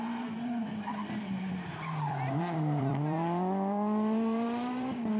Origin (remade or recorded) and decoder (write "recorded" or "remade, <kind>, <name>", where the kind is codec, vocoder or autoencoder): remade, vocoder, BigVGAN v2